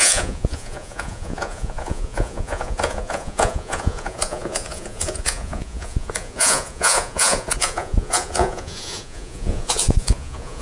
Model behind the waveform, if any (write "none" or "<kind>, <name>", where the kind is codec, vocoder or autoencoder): vocoder, Vocos